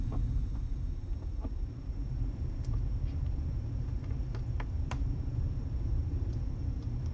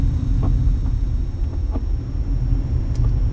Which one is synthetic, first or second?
first